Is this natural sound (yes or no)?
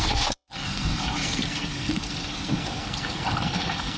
no